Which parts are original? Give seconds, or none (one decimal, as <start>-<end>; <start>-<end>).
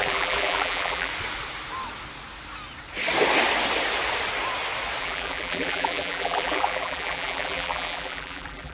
1.1-5.0